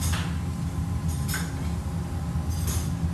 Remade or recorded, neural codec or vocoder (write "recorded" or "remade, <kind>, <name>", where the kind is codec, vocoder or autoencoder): recorded